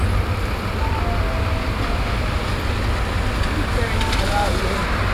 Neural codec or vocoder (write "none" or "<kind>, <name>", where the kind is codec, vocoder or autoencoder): none